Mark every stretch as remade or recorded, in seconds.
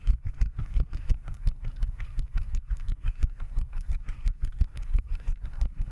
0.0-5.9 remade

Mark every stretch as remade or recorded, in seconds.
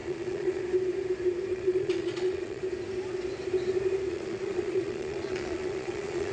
0.0-0.6 remade; 0.6-1.5 recorded; 1.5-2.6 remade; 2.6-4.1 recorded; 4.1-6.3 remade